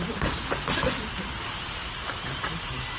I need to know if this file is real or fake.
real